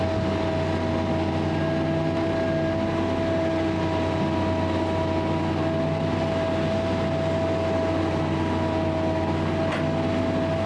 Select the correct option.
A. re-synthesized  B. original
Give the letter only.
B